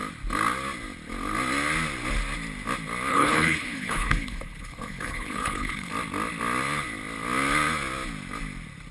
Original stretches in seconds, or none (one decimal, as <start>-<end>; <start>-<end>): 0.0-3.1; 5.9-8.9